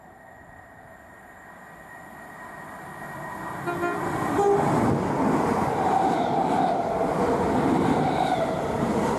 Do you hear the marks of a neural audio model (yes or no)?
no